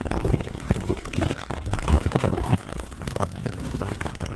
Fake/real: fake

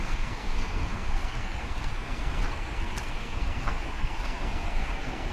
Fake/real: fake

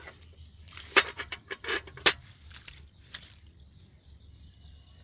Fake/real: fake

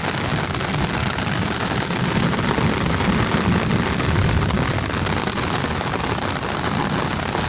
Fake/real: real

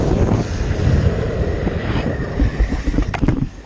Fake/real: real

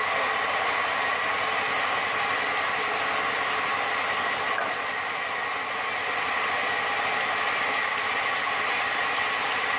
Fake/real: real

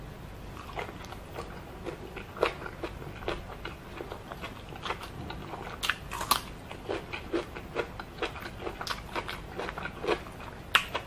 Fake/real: real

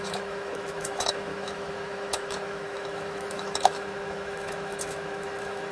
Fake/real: fake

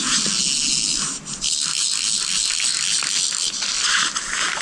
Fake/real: real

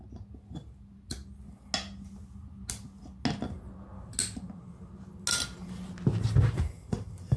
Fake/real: real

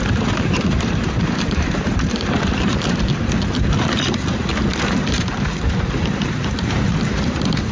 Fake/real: fake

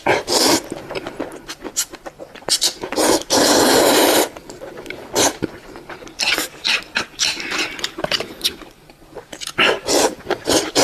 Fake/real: fake